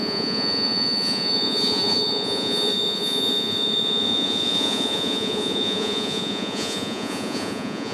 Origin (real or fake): fake